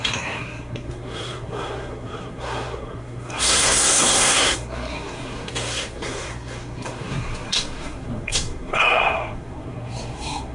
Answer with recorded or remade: remade